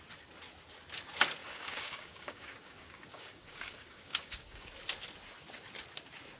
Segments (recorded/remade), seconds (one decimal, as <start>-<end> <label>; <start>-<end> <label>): 0.0-1.4 recorded; 1.4-4.7 remade; 4.7-6.4 recorded